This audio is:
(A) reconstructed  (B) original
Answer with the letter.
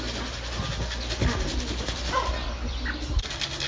B